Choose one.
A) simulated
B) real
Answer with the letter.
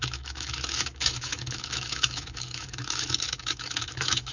A